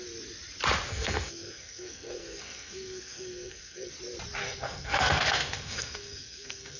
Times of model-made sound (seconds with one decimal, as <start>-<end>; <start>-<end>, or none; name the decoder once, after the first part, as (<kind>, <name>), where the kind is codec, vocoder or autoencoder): 0.9-3.9 (codec, SNAC); 4.4-6.8